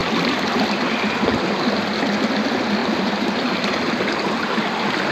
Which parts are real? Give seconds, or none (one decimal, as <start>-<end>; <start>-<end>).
1.7-2.8; 3.9-5.1